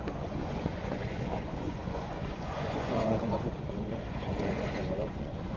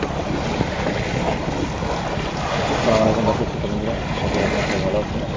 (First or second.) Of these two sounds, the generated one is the first